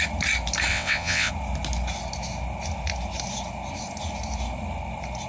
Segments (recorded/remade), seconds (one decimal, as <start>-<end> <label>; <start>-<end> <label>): 0.0-0.7 recorded; 0.7-1.3 remade; 1.3-5.3 recorded